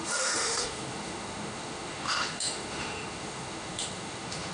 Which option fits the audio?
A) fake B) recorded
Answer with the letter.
A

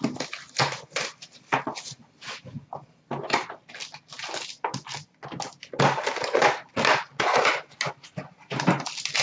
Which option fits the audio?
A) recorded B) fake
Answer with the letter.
A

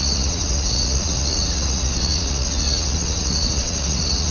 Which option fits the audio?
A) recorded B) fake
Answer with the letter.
B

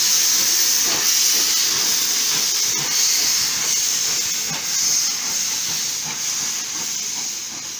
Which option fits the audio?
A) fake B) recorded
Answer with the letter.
B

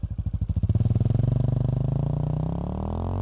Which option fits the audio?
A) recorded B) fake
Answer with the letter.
A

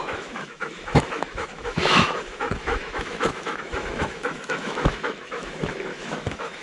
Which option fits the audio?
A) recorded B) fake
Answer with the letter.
B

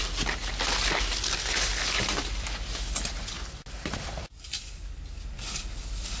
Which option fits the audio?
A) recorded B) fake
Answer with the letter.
A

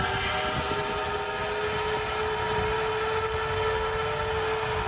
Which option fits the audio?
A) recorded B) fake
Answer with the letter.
A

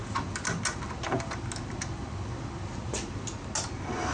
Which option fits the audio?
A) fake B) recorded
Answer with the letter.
B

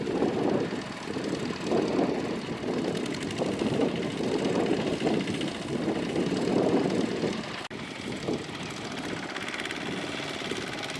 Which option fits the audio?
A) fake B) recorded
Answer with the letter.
B